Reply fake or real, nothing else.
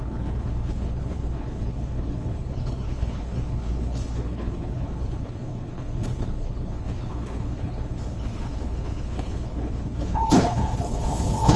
fake